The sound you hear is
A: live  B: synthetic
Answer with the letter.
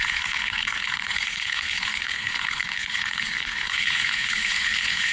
B